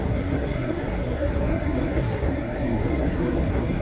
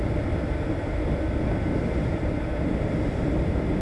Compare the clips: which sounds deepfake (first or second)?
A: first